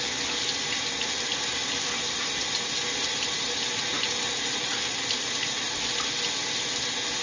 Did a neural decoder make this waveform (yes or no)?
no